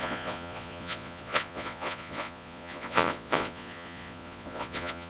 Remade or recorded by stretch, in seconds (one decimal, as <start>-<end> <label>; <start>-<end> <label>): 0.0-5.1 remade